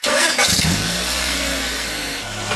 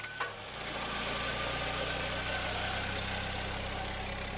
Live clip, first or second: second